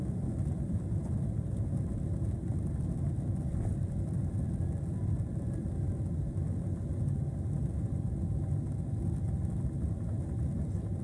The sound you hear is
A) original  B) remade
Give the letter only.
A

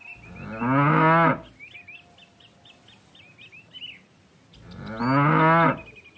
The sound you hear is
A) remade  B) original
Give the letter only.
B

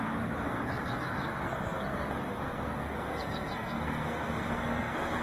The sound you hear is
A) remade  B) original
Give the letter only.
A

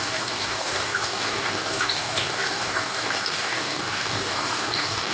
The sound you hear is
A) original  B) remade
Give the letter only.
B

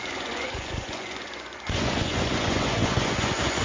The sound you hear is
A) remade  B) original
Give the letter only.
A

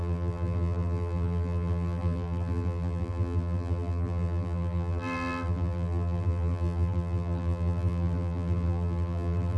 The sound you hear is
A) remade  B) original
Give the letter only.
A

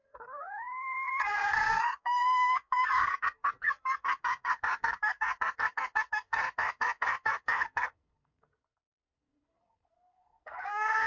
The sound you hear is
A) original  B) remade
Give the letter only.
B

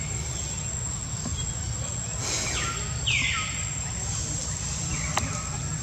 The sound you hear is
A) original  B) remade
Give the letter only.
A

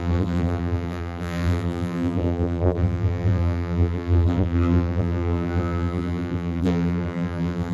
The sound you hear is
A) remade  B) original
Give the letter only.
A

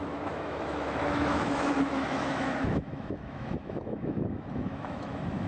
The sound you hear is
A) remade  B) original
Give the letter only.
A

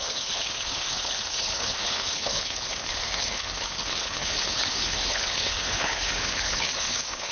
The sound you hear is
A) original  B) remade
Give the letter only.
B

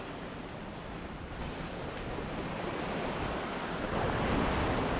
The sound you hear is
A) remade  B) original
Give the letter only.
B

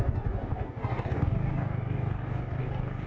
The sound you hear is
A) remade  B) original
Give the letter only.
A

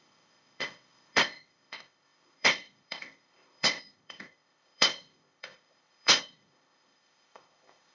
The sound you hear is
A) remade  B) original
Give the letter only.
A